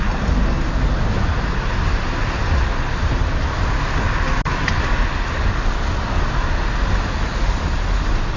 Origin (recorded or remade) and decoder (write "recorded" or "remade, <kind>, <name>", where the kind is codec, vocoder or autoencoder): recorded